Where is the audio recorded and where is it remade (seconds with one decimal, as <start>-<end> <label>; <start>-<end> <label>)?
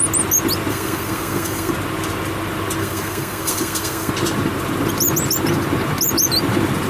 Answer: 0.0-0.7 recorded; 0.7-1.7 remade; 1.7-2.8 recorded; 2.8-4.1 remade; 4.1-6.9 recorded